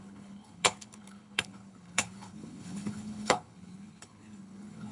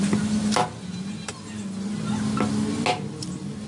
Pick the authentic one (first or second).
second